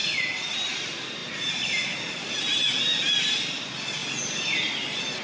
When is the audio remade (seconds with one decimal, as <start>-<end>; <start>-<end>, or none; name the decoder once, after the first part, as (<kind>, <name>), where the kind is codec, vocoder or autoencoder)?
none